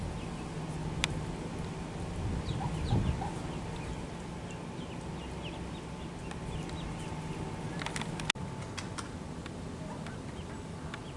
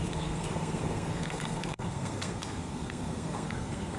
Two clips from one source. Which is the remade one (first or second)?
second